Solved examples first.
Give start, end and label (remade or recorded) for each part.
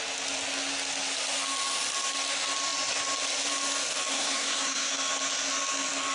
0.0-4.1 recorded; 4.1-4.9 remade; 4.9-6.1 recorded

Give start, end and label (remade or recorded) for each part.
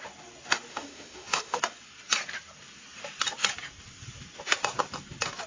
0.0-0.7 recorded; 0.7-1.6 remade; 1.6-5.5 recorded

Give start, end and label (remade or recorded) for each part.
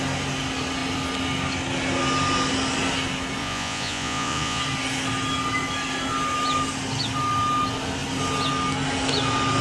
0.0-3.4 recorded; 3.4-4.6 remade; 4.6-9.6 recorded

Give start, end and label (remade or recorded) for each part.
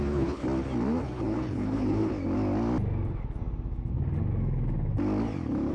0.0-0.4 remade; 0.4-1.0 recorded; 1.0-2.1 remade; 2.1-5.7 recorded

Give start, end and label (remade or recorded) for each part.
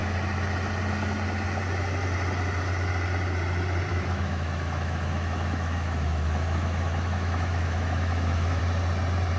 0.0-3.9 recorded; 3.9-8.6 remade; 8.6-9.4 recorded